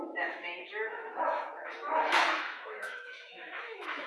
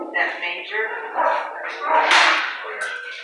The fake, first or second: first